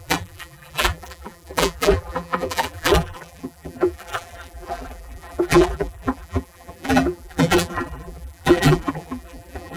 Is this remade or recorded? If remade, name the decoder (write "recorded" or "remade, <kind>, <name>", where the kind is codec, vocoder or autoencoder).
remade, vocoder, BigVGAN v2